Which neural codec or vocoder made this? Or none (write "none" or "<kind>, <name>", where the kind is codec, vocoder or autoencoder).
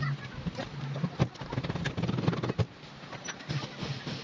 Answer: none